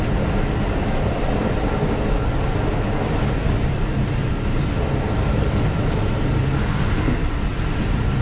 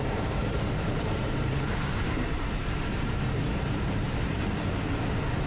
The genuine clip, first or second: first